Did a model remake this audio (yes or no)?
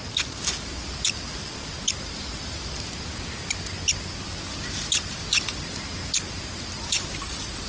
no